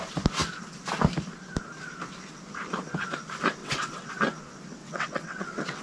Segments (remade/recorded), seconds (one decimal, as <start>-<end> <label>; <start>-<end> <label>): 0.0-3.6 recorded; 3.6-4.1 remade; 4.1-4.8 recorded; 4.8-5.8 remade